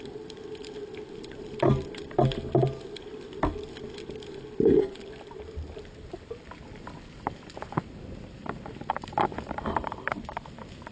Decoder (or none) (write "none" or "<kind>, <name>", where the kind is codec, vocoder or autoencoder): none